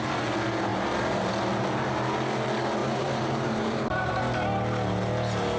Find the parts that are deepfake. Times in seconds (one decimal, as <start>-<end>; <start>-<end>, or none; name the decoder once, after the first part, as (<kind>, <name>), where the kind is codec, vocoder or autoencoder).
2.8-4.2 (vocoder, BigVGAN v2)